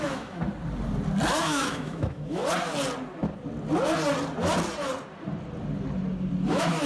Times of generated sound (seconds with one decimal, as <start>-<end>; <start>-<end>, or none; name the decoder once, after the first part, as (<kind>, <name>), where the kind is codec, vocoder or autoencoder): 0.0-0.4 (autoencoder, DAC-VAE); 1.4-2.4; 6.5-6.9